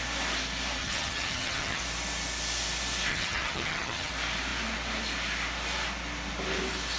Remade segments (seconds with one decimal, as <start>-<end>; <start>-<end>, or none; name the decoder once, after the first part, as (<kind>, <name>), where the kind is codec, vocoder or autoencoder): 0.8-1.8 (vocoder, HiFi-GAN); 3.1-4.1